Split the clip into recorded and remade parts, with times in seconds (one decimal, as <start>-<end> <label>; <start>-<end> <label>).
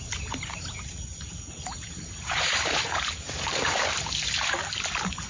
0.0-1.7 recorded; 1.7-3.8 remade; 3.8-5.3 recorded